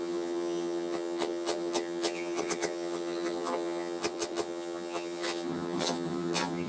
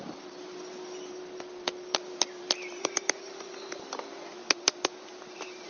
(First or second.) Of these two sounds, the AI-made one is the first